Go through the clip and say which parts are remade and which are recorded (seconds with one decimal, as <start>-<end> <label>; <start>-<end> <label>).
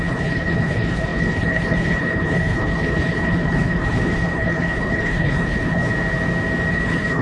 0.0-5.9 remade; 5.9-6.7 recorded; 6.7-7.2 remade